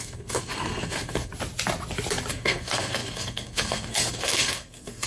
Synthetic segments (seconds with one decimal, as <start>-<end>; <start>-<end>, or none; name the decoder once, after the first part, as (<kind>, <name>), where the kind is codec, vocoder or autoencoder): 0.0-1.3 (codec, SNAC); 2.3-5.1